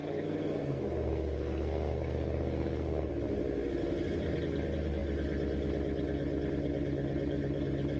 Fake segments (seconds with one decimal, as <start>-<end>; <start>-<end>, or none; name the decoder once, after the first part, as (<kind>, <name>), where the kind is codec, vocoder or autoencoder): 0.0-3.1 (codec, SNAC)